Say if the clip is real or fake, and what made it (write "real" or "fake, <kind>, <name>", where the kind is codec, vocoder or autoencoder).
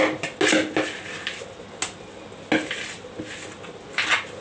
real